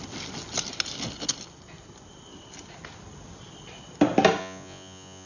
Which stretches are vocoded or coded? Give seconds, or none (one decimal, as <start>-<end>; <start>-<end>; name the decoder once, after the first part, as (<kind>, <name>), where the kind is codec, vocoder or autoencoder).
4.4-5.3 (vocoder, Vocos)